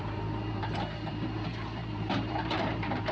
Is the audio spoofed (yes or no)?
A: yes